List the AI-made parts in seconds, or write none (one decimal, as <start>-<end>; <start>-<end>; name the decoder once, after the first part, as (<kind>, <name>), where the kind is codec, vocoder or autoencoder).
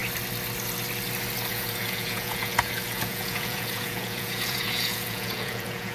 1.5-5.9 (vocoder, Vocos)